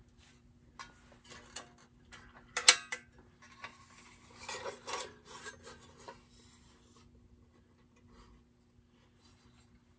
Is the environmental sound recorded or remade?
recorded